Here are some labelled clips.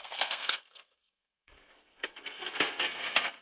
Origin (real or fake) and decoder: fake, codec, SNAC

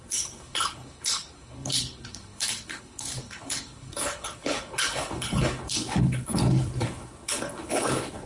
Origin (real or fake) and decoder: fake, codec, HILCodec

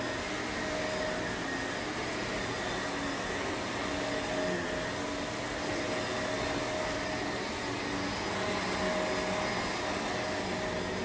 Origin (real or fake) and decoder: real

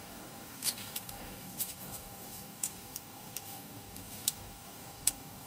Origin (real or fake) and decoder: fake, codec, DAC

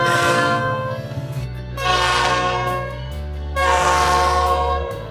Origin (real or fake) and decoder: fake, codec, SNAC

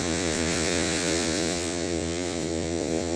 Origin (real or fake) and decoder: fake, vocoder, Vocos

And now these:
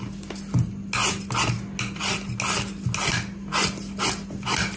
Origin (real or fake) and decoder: real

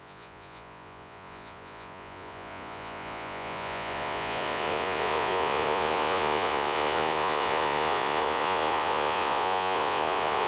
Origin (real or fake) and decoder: fake, vocoder, Vocos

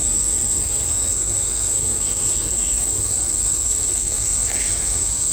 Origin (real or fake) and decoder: fake, codec, SNAC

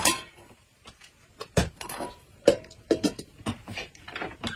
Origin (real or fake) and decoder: fake, vocoder, BigVGAN v2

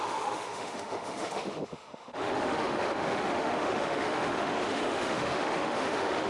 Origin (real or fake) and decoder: fake, autoencoder, DAC-VAE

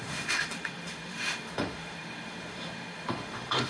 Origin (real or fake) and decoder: fake, autoencoder, DAC-VAE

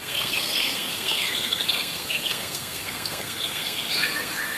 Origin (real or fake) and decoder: fake, codec, SNAC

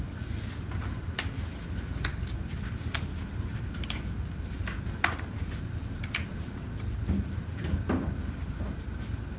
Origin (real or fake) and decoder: real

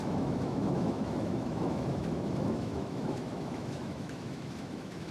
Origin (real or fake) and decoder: fake, autoencoder, DAC-VAE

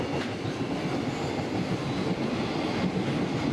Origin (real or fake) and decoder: real